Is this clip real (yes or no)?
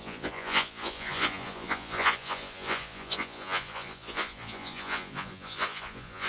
no